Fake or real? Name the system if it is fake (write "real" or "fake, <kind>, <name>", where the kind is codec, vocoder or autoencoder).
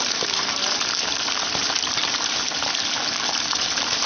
fake, vocoder, BigVGAN v2